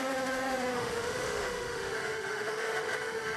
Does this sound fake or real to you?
fake